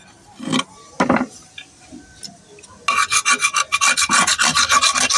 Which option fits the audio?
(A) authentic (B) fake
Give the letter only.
A